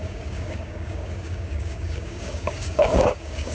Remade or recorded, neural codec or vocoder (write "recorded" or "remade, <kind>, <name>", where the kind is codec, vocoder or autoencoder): remade, codec, DAC